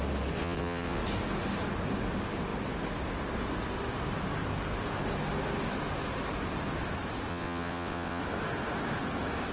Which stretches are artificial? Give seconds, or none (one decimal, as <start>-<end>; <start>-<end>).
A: 0.4-1.0; 7.3-8.2